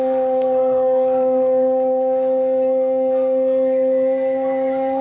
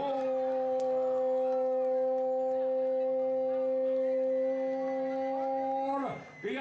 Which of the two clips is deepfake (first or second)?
first